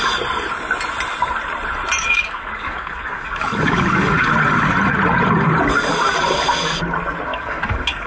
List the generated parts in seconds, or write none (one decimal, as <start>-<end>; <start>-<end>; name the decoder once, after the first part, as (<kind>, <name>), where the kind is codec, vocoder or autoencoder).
2.0-4.3 (codec, DAC); 7.3-8.1